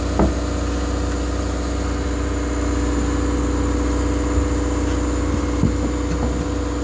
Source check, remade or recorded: recorded